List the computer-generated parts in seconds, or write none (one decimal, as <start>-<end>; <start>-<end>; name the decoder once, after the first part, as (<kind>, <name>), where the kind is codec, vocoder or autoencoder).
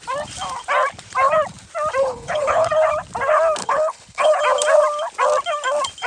2.0-2.7 (codec, HILCodec); 3.6-4.4